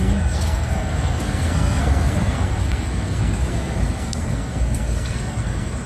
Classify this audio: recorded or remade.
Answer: remade